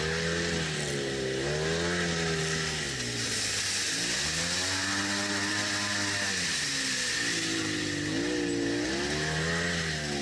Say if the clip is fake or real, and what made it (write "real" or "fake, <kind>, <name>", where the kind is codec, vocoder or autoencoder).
real